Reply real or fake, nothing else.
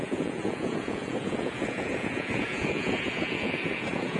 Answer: fake